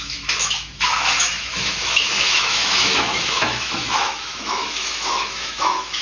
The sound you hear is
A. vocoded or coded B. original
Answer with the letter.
A